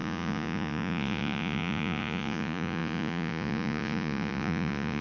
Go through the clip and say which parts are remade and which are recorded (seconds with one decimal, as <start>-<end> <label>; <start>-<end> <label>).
0.0-5.0 remade